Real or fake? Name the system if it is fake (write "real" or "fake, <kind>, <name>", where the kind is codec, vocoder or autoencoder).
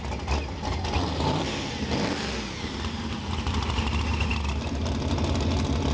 real